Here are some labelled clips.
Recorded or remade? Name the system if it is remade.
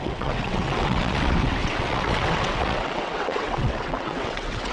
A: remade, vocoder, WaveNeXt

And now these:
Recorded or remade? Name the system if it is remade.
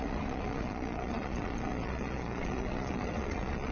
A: remade, vocoder, Vocos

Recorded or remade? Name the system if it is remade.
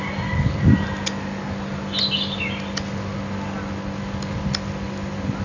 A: recorded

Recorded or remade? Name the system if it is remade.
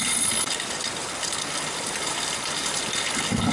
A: recorded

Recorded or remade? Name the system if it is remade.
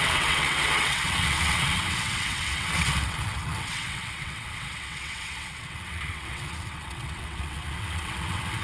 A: remade, vocoder, WaveNeXt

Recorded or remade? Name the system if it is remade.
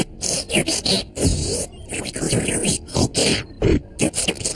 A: recorded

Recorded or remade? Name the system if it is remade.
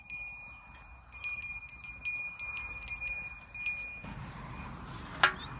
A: recorded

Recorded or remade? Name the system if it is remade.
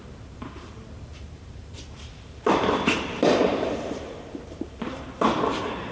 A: remade, vocoder, BigVGAN v2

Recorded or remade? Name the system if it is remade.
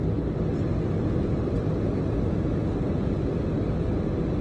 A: recorded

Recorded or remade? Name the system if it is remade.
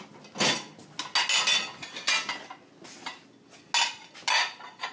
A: recorded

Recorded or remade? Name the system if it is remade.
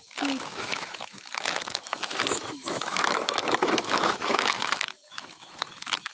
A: remade, autoencoder, DAC-VAE